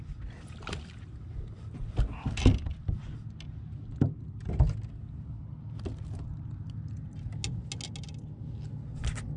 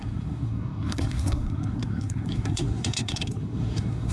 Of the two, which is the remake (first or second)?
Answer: second